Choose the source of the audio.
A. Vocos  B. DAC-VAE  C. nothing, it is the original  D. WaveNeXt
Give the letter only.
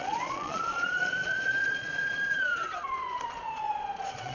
A